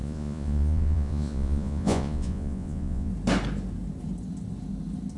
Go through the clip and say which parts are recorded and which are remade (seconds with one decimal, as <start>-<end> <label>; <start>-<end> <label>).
0.0-3.1 remade; 3.1-5.2 recorded